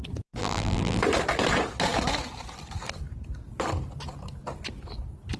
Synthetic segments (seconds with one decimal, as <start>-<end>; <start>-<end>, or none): 0.4-1.0